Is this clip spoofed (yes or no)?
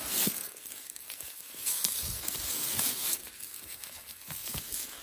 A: yes